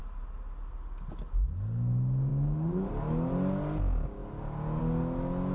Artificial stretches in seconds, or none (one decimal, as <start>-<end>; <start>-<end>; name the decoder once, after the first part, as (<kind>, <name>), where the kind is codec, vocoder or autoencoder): none